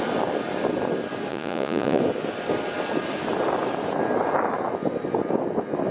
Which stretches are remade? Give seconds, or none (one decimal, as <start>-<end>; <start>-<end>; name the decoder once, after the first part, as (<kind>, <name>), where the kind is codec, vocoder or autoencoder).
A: 1.3-2.0 (vocoder, Vocos)